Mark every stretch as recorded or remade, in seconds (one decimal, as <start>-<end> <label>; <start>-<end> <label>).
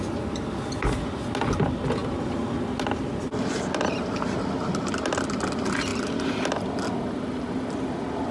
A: 0.0-8.3 recorded